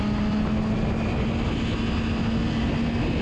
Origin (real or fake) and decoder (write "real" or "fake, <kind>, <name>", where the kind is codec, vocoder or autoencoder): real